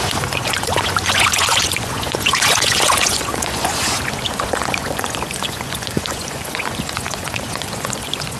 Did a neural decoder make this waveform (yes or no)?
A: yes